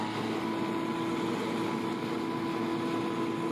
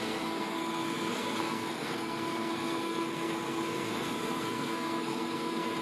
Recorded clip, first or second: first